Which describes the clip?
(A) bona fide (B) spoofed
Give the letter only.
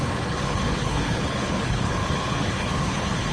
B